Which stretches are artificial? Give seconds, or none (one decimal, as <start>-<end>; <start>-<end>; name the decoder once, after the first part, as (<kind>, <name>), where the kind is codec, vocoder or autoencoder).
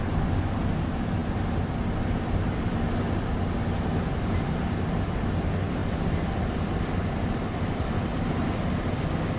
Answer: none